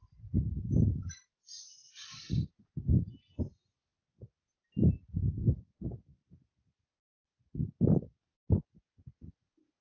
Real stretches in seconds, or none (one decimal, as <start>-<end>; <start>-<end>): 2.7-9.8